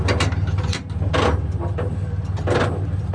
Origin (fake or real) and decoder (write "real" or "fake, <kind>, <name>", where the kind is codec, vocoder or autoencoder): real